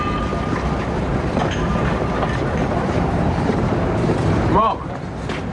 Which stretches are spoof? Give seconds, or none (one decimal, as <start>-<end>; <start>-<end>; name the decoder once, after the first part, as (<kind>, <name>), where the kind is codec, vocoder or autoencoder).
1.1-3.7 (vocoder, BigVGAN v2); 4.2-4.8